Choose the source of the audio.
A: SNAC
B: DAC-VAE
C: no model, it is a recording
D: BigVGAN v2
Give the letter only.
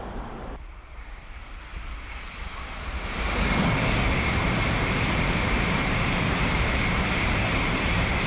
D